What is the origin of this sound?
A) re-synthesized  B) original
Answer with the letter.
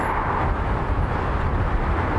B